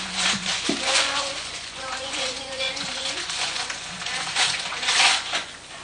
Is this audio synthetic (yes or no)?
yes